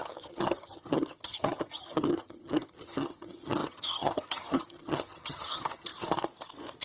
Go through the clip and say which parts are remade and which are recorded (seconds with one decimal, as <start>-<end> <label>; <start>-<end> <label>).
0.0-5.9 remade; 5.9-6.8 recorded